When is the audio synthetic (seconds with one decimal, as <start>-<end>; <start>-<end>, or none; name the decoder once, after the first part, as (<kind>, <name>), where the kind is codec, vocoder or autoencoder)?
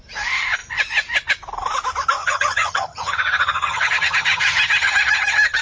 2.2-5.6 (vocoder, HiFi-GAN)